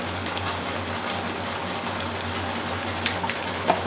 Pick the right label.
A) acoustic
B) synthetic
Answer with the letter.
A